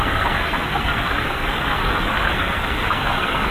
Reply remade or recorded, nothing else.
remade